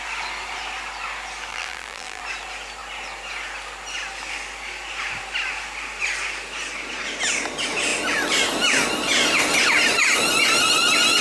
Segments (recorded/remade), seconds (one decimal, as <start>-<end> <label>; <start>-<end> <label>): 0.0-1.5 recorded; 1.5-2.2 remade; 2.2-11.2 recorded